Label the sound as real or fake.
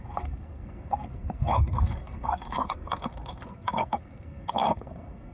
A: fake